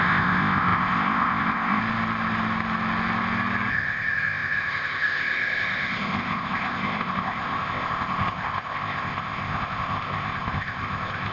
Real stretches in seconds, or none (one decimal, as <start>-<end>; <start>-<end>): 1.8-3.7